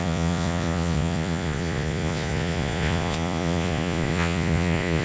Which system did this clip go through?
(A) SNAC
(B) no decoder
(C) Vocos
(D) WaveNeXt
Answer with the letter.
C